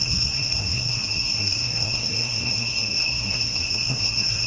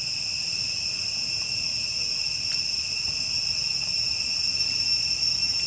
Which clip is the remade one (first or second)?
first